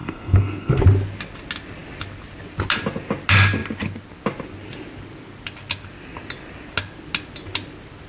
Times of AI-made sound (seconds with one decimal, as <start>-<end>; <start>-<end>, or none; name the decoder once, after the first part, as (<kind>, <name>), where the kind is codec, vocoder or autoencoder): 0.0-0.8 (codec, SNAC)